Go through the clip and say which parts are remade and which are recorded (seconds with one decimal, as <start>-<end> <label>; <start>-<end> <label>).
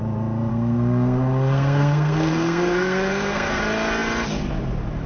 0.0-0.5 recorded; 0.5-3.6 remade; 3.6-5.1 recorded